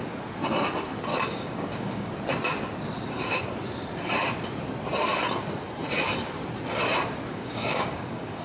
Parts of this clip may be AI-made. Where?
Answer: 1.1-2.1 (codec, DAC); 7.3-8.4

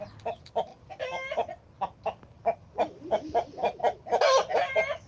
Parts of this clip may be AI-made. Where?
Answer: none

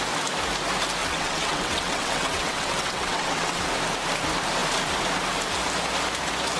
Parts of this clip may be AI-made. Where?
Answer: 1.0-3.6 (vocoder, WaveNeXt)

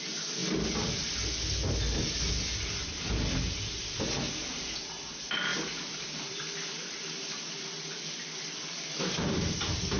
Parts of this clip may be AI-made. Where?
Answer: 0.4-1.2 (vocoder, BigVGAN v2); 5.5-10.0

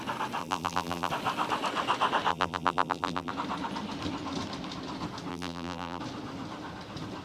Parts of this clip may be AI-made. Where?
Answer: 0.4-1.1 (vocoder, BigVGAN v2); 2.3-3.3; 5.3-6.0

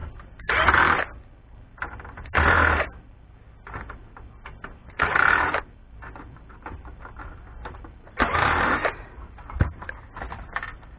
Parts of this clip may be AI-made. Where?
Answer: 4.8-5.6 (vocoder, BigVGAN v2)